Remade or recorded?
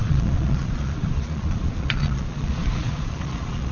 remade